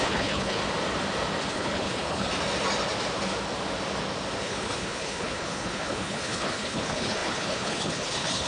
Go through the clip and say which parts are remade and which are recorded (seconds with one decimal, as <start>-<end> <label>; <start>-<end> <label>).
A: 0.0-0.6 remade; 0.6-1.5 recorded; 1.5-2.3 remade; 2.3-4.4 recorded; 4.4-8.5 remade